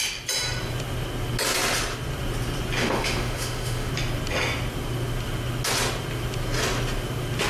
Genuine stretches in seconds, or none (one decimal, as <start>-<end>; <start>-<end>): 0.0-2.8; 3.9-7.5